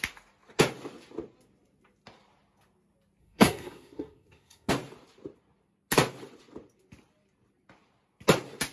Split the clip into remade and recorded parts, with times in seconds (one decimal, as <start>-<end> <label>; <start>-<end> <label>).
0.0-3.2 recorded; 3.2-4.7 remade; 4.7-8.7 recorded